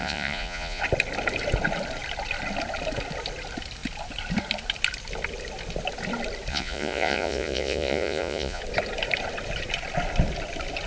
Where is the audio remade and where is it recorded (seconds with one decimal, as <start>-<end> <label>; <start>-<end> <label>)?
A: 0.0-0.8 remade; 0.8-6.5 recorded; 6.5-8.6 remade; 8.6-10.9 recorded